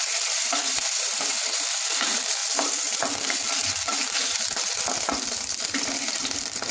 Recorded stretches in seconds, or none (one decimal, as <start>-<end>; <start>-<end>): 2.4-5.0